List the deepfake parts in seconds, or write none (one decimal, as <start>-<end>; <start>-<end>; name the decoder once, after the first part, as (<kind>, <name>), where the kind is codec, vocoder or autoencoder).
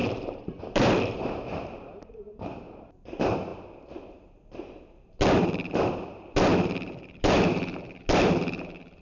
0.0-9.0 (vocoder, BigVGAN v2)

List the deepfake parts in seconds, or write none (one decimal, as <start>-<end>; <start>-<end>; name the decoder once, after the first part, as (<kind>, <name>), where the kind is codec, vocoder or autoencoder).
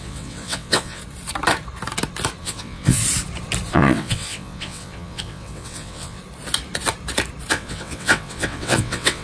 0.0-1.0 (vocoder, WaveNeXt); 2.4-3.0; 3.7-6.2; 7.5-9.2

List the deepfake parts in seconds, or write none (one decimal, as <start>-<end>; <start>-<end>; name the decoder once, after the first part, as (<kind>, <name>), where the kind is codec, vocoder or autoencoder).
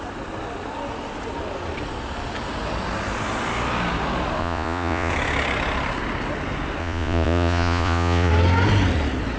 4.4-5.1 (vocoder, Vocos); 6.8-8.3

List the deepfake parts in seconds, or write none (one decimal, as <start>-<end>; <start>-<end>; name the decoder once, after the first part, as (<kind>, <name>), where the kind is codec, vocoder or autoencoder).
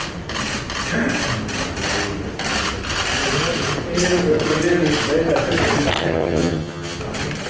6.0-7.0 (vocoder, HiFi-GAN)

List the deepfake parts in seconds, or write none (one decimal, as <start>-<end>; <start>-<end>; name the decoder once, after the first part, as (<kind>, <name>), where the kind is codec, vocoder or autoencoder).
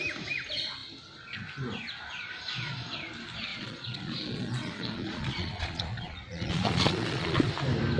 3.5-7.5 (vocoder, Vocos)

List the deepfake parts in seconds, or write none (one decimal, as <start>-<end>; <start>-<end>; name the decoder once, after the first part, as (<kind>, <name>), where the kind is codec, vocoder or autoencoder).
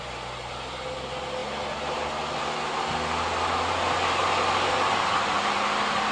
none